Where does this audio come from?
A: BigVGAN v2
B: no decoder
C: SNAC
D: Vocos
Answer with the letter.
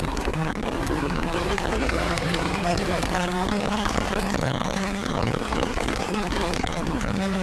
C